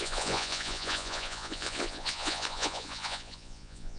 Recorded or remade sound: remade